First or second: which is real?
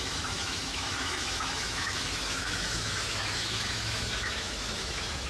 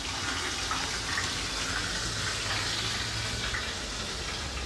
second